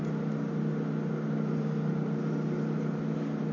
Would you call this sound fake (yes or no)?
no